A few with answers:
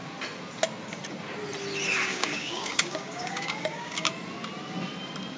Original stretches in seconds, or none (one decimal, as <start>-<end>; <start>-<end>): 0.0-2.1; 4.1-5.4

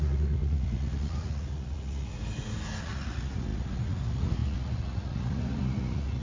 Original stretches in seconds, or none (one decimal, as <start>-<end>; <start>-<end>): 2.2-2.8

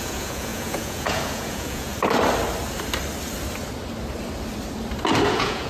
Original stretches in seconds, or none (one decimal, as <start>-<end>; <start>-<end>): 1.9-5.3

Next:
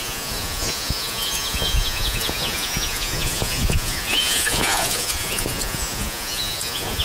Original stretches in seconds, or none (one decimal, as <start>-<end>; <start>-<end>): none

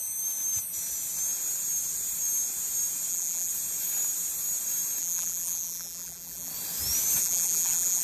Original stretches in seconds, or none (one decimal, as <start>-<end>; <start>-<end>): 0.0-3.1; 3.5-5.0; 6.5-7.2

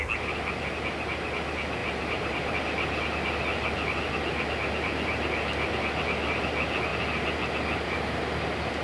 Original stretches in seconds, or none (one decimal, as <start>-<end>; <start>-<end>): 0.0-1.8; 2.5-8.8

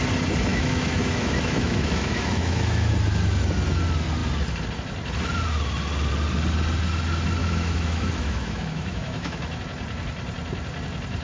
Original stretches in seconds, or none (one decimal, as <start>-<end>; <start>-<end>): 0.0-0.5; 2.9-7.4; 9.6-11.2

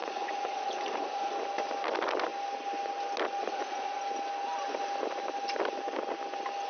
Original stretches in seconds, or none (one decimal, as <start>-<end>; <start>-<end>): 1.3-3.4; 4.0-6.7